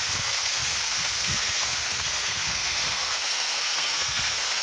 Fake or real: fake